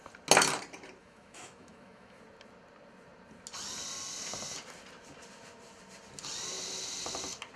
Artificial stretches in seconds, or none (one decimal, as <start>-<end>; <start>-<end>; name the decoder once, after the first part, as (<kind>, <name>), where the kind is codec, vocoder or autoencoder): 1.0-2.2 (autoencoder, DAC-VAE)